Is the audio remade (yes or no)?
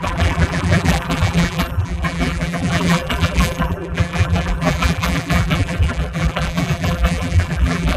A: yes